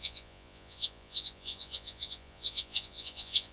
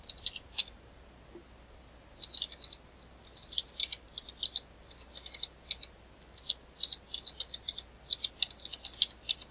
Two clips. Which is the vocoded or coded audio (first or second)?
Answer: first